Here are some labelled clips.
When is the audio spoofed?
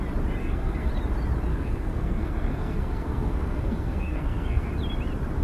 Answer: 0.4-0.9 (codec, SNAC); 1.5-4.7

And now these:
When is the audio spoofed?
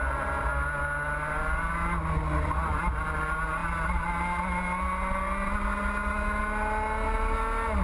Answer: none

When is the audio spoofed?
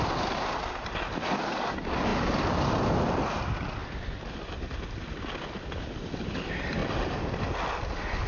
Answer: none